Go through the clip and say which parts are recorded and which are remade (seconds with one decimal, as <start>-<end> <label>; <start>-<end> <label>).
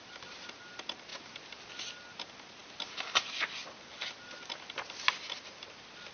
0.0-6.1 recorded